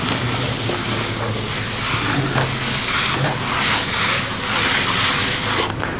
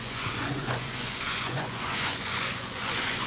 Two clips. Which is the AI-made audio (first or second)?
second